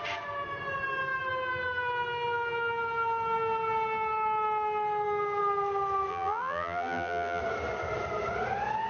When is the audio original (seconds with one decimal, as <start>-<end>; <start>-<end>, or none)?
0.0-6.1; 7.4-8.9